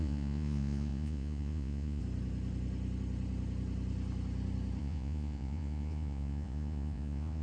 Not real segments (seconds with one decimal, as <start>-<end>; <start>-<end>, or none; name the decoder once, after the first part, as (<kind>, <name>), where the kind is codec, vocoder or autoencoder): 0.0-2.0 (vocoder, Vocos); 4.8-7.4